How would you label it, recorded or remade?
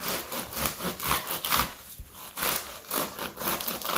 recorded